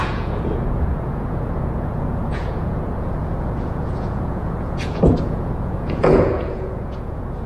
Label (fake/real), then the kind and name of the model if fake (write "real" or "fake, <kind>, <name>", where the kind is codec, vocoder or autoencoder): fake, vocoder, Vocos